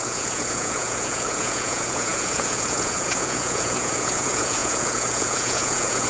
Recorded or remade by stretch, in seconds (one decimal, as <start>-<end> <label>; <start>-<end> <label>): 0.0-6.1 remade